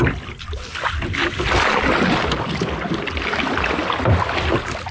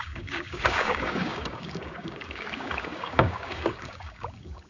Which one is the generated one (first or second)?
second